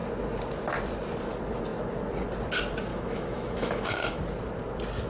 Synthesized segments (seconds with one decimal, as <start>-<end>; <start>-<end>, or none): 2.9-4.2